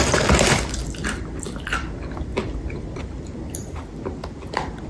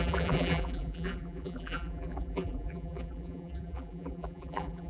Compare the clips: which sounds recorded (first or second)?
first